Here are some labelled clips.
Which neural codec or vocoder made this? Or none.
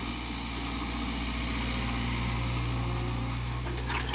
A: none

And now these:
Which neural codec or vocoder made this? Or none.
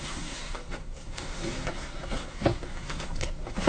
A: codec, SNAC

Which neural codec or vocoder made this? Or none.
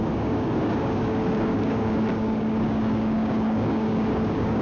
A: codec, DAC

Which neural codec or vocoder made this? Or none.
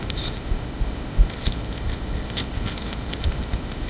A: codec, ZipCodec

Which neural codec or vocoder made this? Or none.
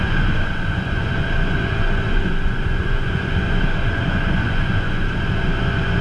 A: vocoder, Vocos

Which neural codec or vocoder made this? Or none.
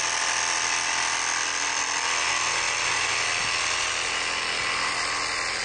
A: none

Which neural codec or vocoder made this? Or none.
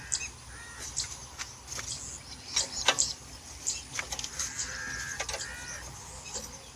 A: none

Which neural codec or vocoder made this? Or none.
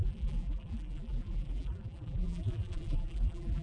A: vocoder, BigVGAN v2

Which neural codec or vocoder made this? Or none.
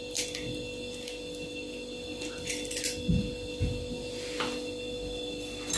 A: none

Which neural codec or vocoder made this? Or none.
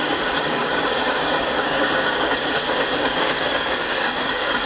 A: codec, DAC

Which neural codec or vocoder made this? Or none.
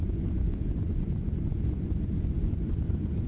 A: vocoder, Vocos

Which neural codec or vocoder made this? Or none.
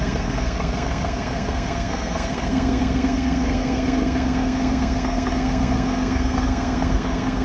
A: codec, SNAC